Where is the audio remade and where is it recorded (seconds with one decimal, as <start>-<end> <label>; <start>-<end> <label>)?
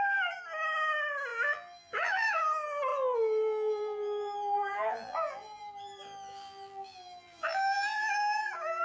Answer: 0.0-1.3 recorded; 1.3-2.4 remade; 2.4-2.9 recorded; 2.9-8.1 remade; 8.1-8.8 recorded